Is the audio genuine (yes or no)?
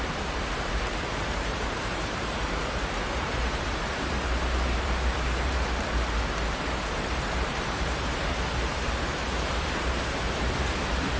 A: no